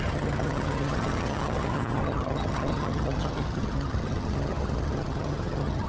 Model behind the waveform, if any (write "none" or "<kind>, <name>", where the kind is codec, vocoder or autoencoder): vocoder, HiFi-GAN